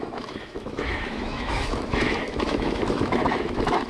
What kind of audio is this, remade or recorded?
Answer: remade